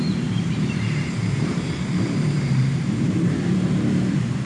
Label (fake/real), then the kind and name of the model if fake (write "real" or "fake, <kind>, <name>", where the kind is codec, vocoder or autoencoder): fake, vocoder, BigVGAN v2